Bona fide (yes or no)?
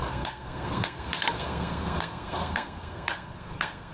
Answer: no